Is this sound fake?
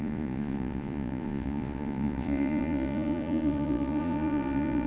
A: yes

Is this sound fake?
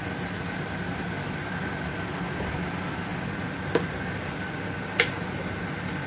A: no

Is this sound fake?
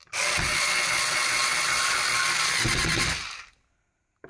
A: no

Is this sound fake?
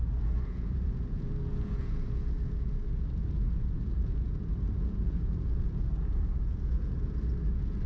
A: yes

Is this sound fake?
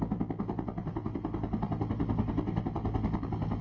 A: no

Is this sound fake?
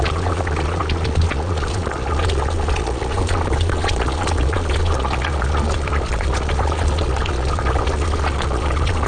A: yes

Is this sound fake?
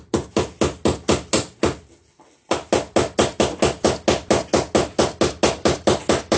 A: no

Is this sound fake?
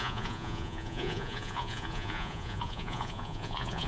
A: yes